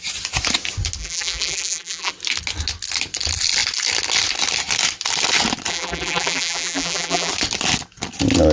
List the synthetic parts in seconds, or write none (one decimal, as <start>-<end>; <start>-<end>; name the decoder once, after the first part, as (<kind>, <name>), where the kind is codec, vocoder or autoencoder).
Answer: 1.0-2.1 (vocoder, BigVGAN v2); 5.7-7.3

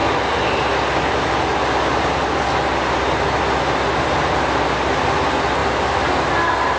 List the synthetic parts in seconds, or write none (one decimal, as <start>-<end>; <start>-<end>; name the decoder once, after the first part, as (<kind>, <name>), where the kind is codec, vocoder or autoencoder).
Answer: none

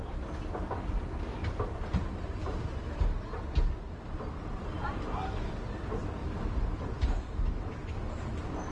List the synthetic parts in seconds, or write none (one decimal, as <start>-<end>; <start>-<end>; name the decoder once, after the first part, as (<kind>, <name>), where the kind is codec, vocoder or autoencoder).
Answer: 1.4-5.5 (vocoder, BigVGAN v2); 6.2-7.7

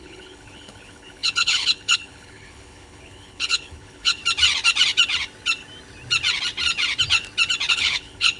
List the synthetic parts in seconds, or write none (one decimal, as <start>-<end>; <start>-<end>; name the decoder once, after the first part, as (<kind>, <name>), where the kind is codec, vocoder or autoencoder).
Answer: 0.0-4.2 (codec, HILCodec); 7.7-8.4

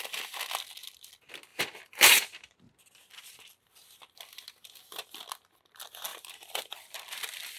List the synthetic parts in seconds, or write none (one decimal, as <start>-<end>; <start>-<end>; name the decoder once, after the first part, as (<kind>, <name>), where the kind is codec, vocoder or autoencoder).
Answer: 1.5-4.1 (vocoder, BigVGAN v2); 6.1-7.6

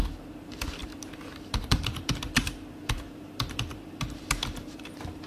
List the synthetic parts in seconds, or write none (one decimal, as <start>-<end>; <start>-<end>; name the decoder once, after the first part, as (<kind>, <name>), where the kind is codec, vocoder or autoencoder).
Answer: 0.0-5.3 (vocoder, BigVGAN v2)